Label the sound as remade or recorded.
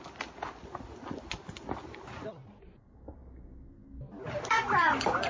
recorded